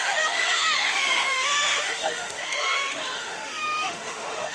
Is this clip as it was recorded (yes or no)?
no